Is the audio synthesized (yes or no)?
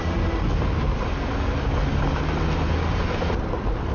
no